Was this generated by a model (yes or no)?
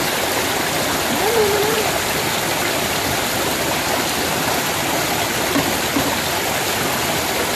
no